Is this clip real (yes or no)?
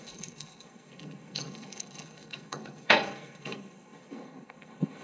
no